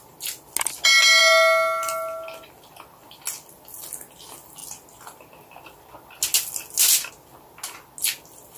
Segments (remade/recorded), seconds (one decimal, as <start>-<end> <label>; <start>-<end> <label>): 0.0-8.6 recorded